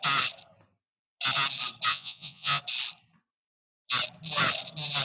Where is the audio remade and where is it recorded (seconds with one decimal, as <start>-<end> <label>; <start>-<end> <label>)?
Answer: 0.0-1.9 recorded; 1.9-2.6 remade; 2.6-5.0 recorded

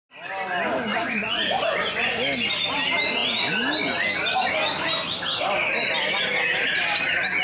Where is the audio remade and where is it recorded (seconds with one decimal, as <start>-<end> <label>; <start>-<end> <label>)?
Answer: 0.0-0.9 recorded; 0.9-2.1 remade; 2.1-7.4 recorded

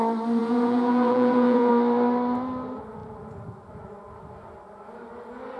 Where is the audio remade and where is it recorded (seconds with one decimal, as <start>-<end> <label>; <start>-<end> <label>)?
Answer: 0.0-0.4 recorded; 0.4-1.7 remade; 1.7-5.6 recorded

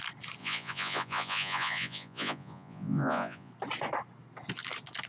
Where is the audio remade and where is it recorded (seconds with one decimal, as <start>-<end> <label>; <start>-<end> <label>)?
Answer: 0.0-0.4 recorded; 0.4-3.5 remade; 3.5-5.1 recorded

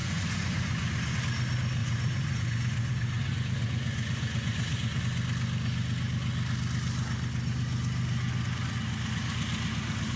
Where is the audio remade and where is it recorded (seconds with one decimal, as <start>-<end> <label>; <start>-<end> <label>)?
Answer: 0.0-1.2 remade; 1.2-1.8 recorded; 1.8-5.0 remade; 5.0-10.2 recorded

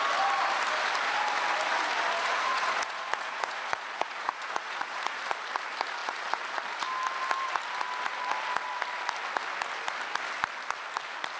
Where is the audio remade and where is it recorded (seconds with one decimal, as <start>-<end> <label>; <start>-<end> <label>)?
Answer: 0.0-2.2 recorded; 2.2-5.2 remade; 5.2-11.4 recorded

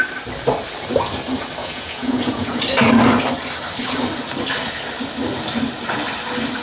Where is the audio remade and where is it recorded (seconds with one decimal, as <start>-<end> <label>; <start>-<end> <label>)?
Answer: 0.0-1.6 recorded; 1.6-2.6 remade; 2.6-6.6 recorded

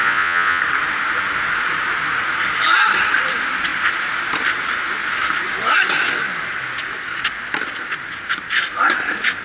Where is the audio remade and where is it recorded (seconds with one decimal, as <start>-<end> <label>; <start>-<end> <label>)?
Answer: 0.0-0.6 remade; 0.6-9.4 recorded